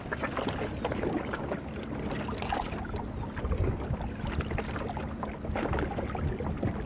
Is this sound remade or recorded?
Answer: recorded